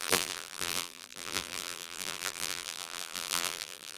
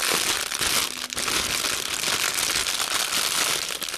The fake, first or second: first